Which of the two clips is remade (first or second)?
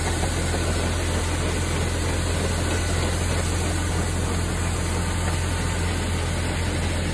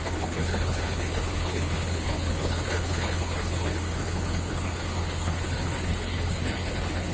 second